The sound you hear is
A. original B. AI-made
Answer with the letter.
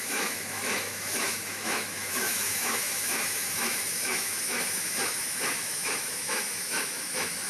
B